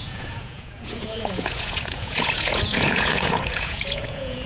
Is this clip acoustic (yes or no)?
no